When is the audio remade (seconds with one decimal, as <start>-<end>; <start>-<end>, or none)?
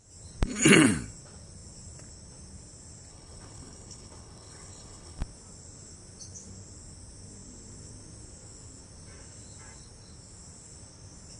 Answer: 3.1-5.2